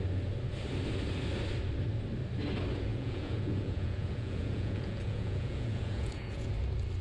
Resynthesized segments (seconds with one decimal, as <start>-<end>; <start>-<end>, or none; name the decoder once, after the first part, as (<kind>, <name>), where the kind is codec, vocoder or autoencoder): 2.9-6.5 (vocoder, Vocos)